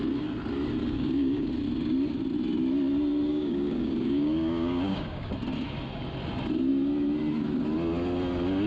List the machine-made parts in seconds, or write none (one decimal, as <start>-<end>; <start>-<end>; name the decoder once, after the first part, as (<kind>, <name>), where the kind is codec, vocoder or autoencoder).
0.8-1.5 (codec, DAC); 3.3-5.3